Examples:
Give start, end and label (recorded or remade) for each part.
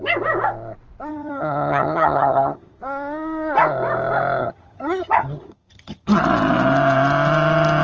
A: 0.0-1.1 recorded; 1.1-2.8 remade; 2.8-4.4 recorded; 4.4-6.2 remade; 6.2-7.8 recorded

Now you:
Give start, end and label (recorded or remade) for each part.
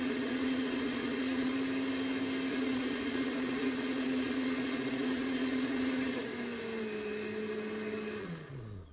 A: 0.0-1.5 remade; 1.5-2.5 recorded; 2.5-6.3 remade; 6.3-8.2 recorded; 8.2-8.9 remade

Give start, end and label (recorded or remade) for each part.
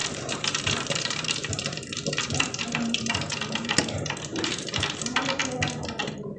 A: 0.0-5.4 remade; 5.4-6.0 recorded; 6.0-6.4 remade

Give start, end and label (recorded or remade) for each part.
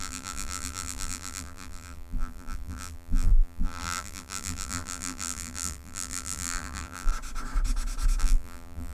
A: 0.0-7.1 remade; 7.1-8.2 recorded; 8.2-8.9 remade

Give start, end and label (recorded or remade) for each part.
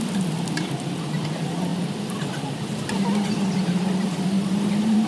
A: 0.0-5.1 remade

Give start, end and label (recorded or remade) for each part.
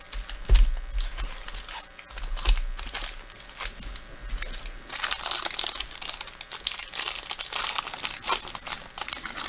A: 0.0-9.5 recorded